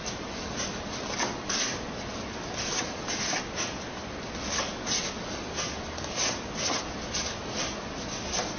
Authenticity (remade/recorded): recorded